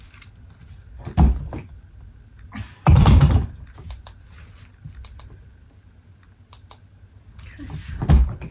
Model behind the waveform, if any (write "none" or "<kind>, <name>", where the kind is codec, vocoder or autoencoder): none